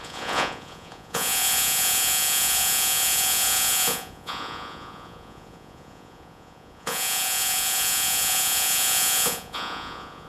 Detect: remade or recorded remade